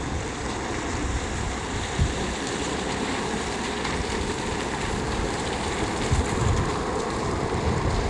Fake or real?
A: fake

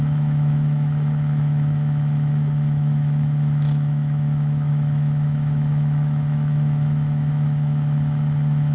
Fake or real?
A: fake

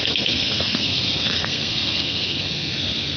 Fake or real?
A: fake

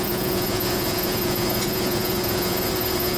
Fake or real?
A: fake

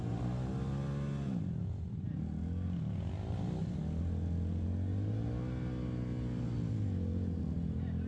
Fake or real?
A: real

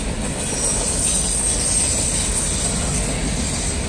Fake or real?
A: real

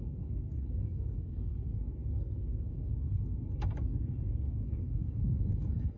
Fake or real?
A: fake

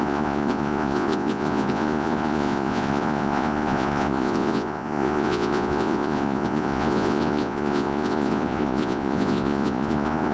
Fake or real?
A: fake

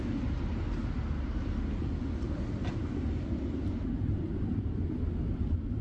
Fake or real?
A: real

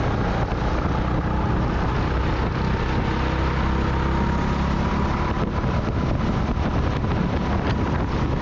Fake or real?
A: real